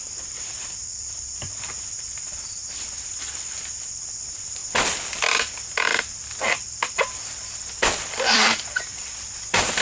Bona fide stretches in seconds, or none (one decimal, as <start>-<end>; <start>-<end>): none